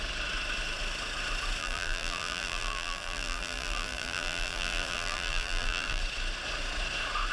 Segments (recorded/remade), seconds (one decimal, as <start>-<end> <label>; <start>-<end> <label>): 0.0-1.6 recorded; 1.6-6.0 remade; 6.0-7.3 recorded